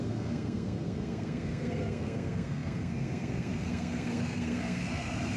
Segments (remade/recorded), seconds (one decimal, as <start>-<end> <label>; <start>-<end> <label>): 0.0-5.4 remade

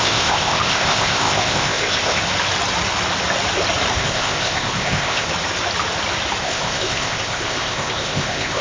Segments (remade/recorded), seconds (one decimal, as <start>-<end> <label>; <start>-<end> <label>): 0.0-2.2 remade; 2.2-3.9 recorded; 3.9-5.3 remade; 5.3-6.4 recorded; 6.4-8.6 remade

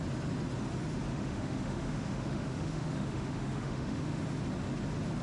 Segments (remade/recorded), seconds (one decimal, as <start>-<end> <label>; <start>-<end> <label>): 0.0-1.1 recorded; 1.1-4.2 remade; 4.2-5.2 recorded

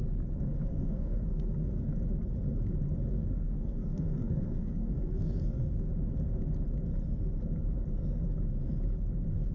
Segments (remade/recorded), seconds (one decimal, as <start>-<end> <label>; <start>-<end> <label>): 0.0-0.7 recorded; 0.7-1.8 remade; 1.8-3.1 recorded; 3.1-5.9 remade; 5.9-9.5 recorded

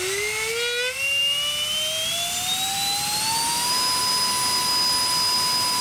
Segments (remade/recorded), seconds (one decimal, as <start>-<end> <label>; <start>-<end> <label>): 0.0-5.8 recorded

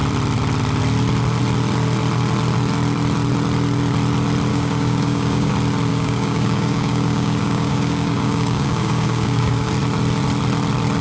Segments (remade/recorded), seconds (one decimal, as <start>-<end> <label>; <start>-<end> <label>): 0.0-4.5 recorded; 4.5-5.5 remade; 5.5-5.9 recorded; 5.9-9.7 remade; 9.7-11.0 recorded